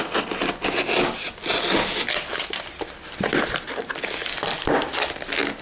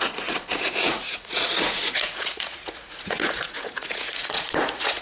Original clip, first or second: first